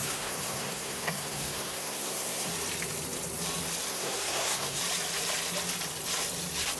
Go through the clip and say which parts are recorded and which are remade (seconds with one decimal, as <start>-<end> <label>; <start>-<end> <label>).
0.0-2.5 remade; 2.5-3.9 recorded; 3.9-4.8 remade; 4.8-6.8 recorded